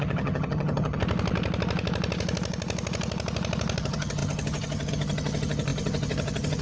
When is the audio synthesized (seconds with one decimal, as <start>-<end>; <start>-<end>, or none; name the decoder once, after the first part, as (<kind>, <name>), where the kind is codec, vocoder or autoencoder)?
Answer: 0.0-1.0 (vocoder, HiFi-GAN); 3.8-6.6